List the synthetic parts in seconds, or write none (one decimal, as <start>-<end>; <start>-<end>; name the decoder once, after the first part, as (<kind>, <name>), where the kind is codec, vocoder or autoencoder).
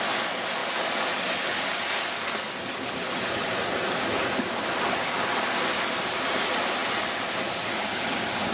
none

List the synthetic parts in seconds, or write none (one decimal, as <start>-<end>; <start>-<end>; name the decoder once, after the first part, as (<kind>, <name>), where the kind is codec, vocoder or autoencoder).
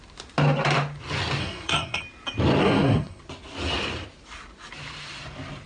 1.4-2.0 (codec, SNAC); 2.6-3.2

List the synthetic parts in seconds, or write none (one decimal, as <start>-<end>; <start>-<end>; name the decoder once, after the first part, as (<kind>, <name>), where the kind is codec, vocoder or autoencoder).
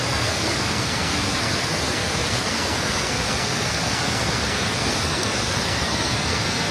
0.0-6.7 (codec, SNAC)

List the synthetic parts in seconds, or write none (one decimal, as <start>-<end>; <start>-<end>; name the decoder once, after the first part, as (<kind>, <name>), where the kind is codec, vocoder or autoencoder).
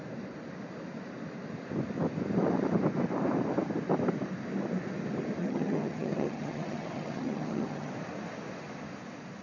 5.4-7.9 (vocoder, HiFi-GAN)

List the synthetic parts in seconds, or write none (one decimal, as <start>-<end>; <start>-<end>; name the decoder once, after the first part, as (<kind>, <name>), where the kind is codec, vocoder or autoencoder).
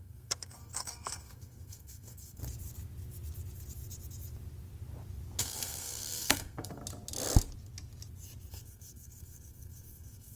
0.0-2.4 (codec, SNAC); 5.4-6.8; 8.5-10.4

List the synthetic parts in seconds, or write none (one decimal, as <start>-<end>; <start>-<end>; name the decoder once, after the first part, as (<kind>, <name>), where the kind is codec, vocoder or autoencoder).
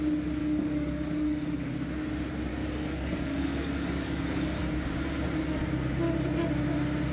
0.4-1.7 (codec, DAC); 2.5-4.6